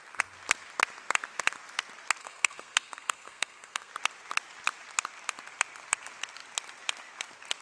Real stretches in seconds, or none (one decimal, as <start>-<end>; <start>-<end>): 0.0-2.2; 3.9-7.6